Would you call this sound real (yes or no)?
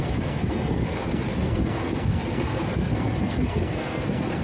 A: no